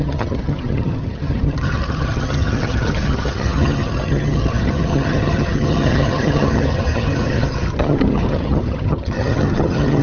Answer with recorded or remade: remade